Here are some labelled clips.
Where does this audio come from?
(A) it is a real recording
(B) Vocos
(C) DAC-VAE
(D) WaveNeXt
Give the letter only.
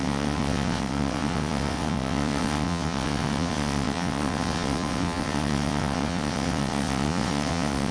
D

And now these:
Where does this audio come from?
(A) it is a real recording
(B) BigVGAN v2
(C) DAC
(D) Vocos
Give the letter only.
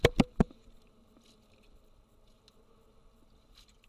A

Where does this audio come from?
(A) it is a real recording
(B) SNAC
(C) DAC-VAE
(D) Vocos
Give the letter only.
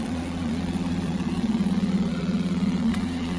D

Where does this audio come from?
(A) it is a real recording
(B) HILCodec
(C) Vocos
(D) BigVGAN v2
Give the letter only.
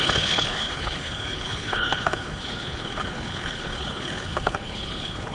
B